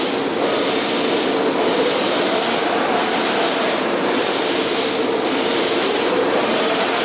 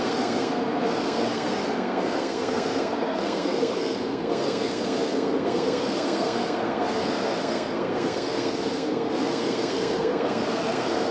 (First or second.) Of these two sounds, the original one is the first